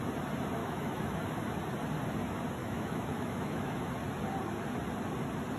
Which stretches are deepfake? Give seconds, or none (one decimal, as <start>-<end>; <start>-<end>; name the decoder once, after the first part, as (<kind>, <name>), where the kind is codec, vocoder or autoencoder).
0.6-1.2 (autoencoder, DAC-VAE); 2.6-3.9